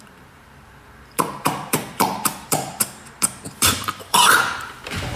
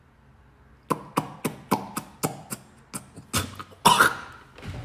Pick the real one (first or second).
second